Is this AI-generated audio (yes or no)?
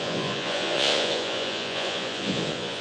yes